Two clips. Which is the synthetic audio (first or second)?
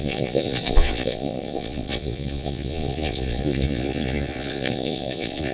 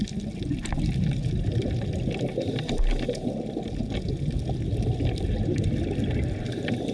first